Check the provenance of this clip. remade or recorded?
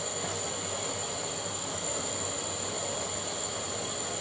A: recorded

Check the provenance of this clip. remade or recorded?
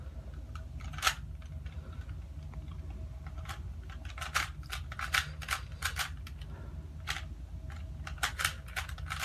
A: recorded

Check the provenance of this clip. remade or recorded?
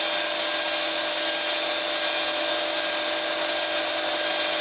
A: recorded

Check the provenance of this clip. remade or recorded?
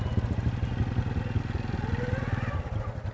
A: recorded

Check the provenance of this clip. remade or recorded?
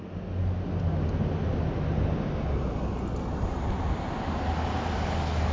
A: recorded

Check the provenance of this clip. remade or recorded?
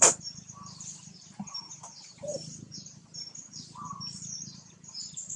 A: remade